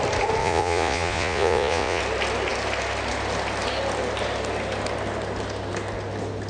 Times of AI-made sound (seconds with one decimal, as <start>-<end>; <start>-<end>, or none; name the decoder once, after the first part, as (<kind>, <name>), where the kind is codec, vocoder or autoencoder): 0.4-2.0 (vocoder, Vocos)